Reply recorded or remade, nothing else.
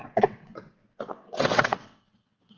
remade